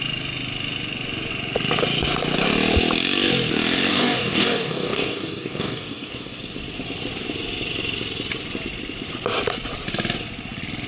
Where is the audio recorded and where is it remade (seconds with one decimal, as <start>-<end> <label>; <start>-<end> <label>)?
0.0-3.9 recorded; 3.9-6.4 remade; 6.4-10.9 recorded